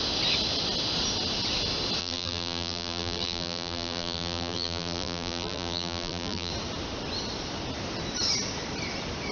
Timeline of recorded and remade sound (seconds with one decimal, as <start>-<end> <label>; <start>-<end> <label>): 0.0-2.0 recorded; 2.0-6.5 remade; 6.5-9.3 recorded